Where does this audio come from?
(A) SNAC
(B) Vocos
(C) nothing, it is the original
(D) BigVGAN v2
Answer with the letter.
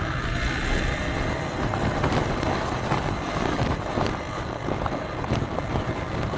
C